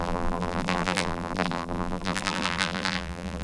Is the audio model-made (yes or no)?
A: yes